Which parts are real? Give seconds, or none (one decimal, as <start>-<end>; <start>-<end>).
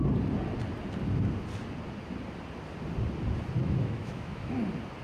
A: 0.0-3.6; 4.6-5.0